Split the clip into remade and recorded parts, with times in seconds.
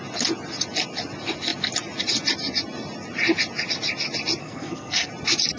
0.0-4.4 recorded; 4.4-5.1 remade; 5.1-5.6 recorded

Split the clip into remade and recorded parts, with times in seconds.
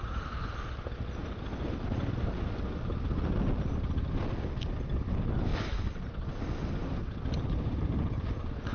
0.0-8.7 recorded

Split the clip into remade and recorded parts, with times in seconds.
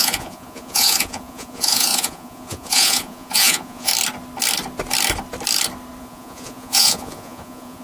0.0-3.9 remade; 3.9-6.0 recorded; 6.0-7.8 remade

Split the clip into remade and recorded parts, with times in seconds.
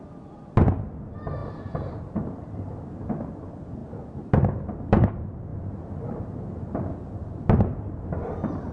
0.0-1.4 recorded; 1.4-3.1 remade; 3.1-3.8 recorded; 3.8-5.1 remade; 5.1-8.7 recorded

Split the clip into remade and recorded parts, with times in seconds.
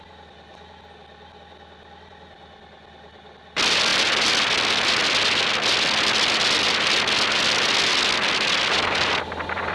0.0-9.7 recorded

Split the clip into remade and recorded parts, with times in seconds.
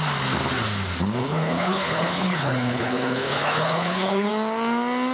0.0-1.2 recorded; 1.2-4.3 remade; 4.3-5.1 recorded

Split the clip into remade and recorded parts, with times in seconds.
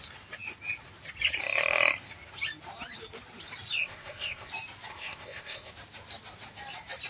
0.0-3.8 recorded; 3.8-4.5 remade; 4.5-4.9 recorded; 4.9-5.7 remade; 5.7-7.1 recorded